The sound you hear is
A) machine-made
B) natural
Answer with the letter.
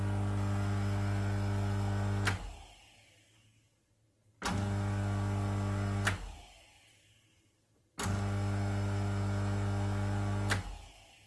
B